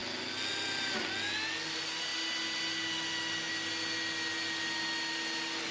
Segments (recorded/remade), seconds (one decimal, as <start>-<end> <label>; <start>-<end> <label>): 0.0-5.7 recorded